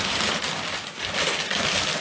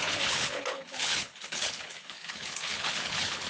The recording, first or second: first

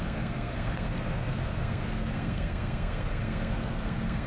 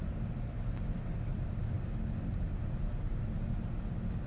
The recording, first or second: second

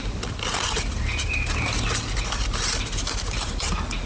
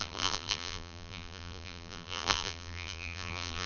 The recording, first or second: first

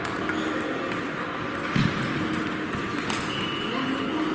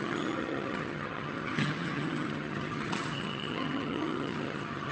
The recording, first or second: first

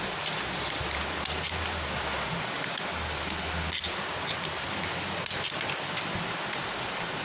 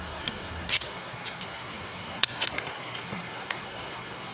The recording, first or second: first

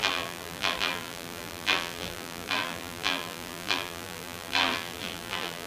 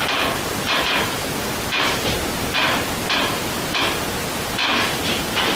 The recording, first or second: second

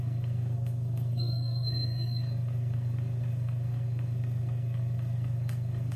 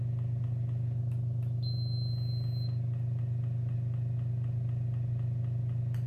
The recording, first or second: second